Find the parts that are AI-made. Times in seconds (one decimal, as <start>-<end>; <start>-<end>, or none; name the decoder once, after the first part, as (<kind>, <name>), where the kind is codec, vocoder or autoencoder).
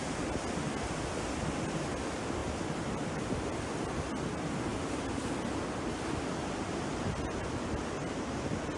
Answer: none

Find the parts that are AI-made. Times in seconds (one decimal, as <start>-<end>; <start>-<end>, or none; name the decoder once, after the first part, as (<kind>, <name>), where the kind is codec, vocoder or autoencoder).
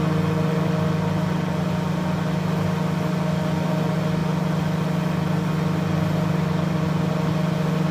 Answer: none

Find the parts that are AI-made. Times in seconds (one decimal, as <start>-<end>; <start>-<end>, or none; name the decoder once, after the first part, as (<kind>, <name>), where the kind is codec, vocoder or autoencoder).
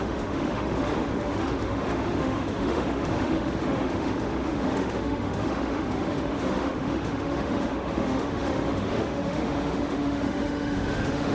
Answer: 0.0-11.3 (autoencoder, DAC-VAE)